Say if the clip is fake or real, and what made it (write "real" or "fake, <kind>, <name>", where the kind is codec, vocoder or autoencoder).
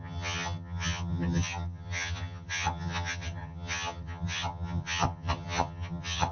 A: fake, vocoder, HiFi-GAN